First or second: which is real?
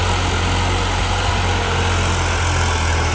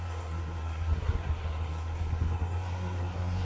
first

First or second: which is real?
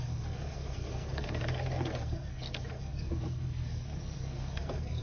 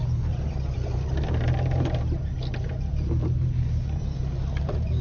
second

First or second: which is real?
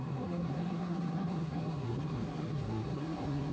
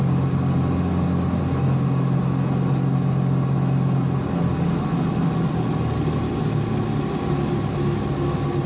second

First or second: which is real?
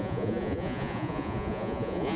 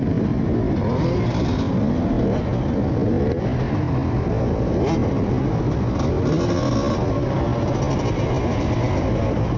second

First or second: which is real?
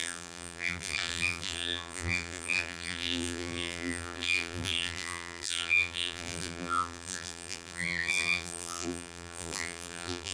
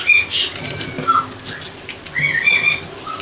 second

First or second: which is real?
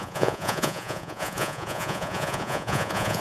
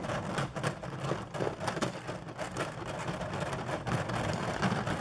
second